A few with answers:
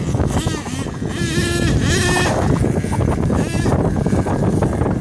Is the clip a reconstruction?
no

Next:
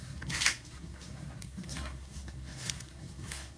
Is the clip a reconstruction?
yes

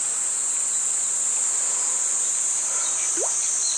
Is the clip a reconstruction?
no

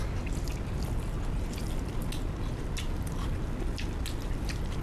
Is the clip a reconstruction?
no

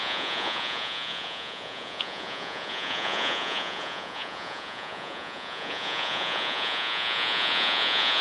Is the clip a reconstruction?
yes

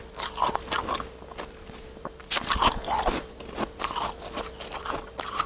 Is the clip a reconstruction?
no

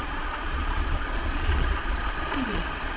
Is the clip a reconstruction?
yes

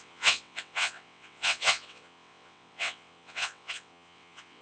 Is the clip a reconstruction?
yes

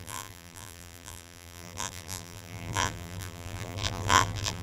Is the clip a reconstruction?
yes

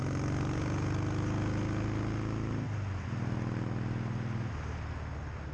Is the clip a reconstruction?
no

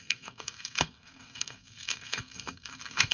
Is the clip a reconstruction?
yes